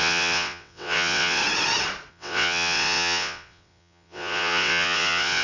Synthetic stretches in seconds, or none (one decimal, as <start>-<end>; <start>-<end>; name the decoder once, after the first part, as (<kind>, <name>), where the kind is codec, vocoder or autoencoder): 0.0-1.4 (vocoder, WaveNeXt); 2.1-5.4

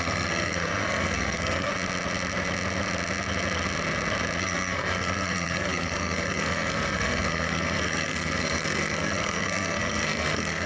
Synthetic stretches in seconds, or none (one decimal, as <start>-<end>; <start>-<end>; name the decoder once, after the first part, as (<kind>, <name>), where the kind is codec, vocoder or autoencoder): 0.0-1.7 (codec, SNAC); 4.4-10.7